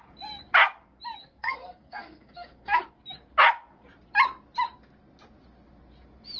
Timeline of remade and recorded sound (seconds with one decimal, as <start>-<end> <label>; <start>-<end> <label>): 0.0-1.2 recorded; 1.2-2.8 remade; 2.8-6.4 recorded